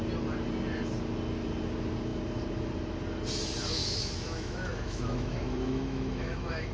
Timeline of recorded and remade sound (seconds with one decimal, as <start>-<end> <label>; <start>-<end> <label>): 0.0-3.8 recorded; 3.8-6.7 remade